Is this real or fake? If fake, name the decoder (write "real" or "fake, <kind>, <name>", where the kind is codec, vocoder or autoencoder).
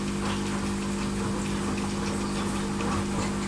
real